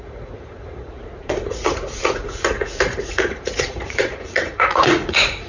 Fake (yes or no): yes